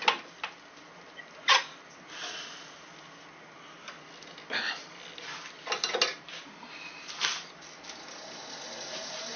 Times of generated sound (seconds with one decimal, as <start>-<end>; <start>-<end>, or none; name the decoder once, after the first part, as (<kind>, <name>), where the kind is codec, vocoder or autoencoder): none

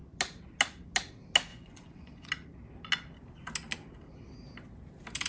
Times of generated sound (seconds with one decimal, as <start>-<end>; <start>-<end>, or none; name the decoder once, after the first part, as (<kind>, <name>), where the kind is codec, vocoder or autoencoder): 1.5-2.3 (vocoder, Vocos)

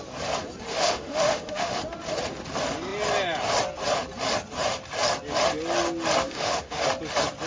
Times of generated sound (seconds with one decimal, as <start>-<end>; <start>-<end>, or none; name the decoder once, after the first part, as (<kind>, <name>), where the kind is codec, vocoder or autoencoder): 0.7-1.8 (autoencoder, DAC-VAE); 6.2-6.8

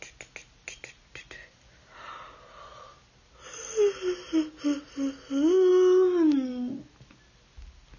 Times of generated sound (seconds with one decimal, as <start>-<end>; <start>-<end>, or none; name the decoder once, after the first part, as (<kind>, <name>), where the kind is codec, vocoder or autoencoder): none